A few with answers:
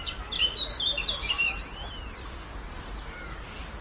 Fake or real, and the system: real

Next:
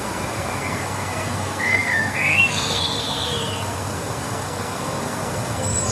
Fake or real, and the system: fake, codec, SNAC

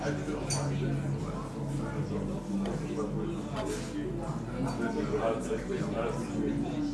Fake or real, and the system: real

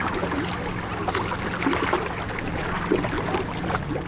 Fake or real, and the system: real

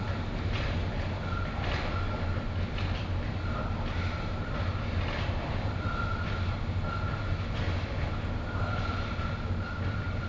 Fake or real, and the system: real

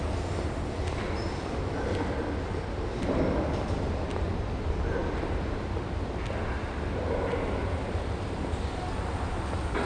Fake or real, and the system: real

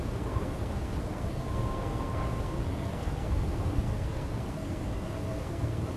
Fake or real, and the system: fake, codec, SNAC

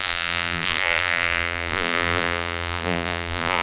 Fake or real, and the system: fake, vocoder, BigVGAN v2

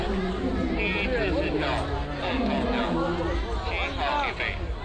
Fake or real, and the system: real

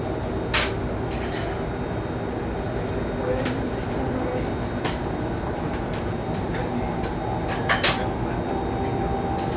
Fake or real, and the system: real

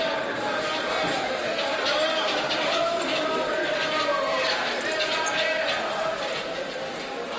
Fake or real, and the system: real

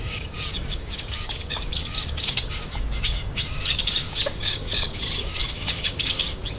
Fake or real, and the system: fake, codec, DAC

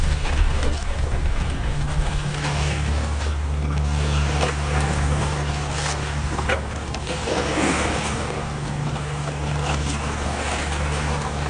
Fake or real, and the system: fake, codec, DAC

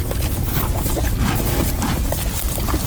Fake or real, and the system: real